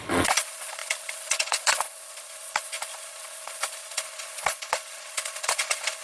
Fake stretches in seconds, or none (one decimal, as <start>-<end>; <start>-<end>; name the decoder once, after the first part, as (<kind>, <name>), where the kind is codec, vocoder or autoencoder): 0.0-6.0 (vocoder, Vocos)